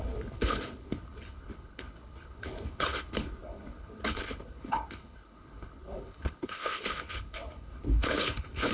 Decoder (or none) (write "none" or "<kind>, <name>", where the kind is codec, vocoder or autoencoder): codec, HILCodec